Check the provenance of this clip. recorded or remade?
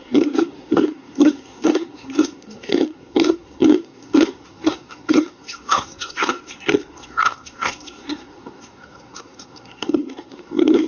remade